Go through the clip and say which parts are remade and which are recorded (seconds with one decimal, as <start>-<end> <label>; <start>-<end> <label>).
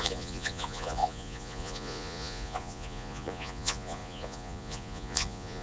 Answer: 0.0-5.6 remade